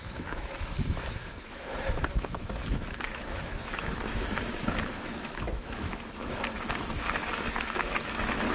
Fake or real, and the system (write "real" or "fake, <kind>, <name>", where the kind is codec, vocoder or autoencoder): fake, autoencoder, DAC-VAE